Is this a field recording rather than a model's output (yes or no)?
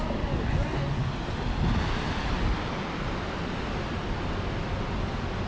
yes